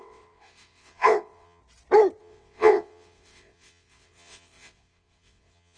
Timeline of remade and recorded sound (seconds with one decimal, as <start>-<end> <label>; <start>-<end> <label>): 0.0-1.6 remade; 1.6-2.2 recorded; 2.2-5.8 remade